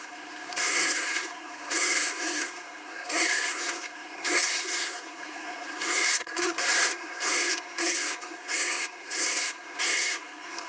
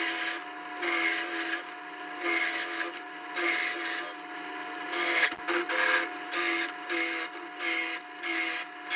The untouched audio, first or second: second